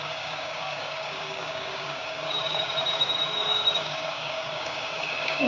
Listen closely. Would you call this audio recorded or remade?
remade